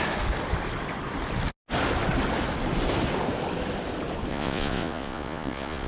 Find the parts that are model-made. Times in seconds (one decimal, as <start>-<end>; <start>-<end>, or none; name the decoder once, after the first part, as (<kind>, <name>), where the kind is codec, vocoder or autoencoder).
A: 4.3-5.9 (vocoder, Vocos)